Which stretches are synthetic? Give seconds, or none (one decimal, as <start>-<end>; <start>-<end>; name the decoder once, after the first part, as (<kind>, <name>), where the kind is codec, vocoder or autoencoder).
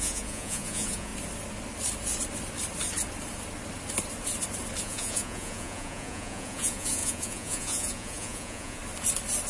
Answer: 0.0-1.1 (vocoder, Vocos); 4.8-8.8